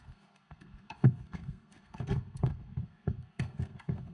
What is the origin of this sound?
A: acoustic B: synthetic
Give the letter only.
B